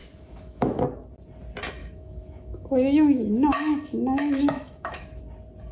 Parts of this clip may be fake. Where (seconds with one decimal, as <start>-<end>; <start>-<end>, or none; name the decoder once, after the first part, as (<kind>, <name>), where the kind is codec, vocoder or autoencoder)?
0.0-0.8 (autoencoder, DAC-VAE); 1.8-5.2